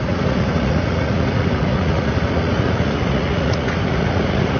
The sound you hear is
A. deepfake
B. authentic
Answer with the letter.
A